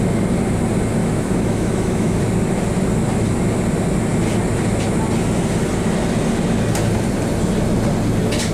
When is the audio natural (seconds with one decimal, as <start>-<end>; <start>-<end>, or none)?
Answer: 0.0-1.0; 2.2-8.5